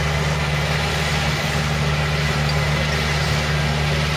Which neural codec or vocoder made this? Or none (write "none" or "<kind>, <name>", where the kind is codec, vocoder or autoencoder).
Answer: none